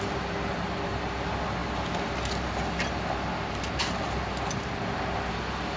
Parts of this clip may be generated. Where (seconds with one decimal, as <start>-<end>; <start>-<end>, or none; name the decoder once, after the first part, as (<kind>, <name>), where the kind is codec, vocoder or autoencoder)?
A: none